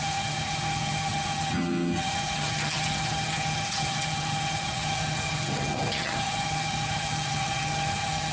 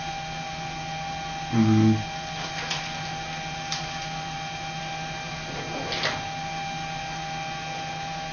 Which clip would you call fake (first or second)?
first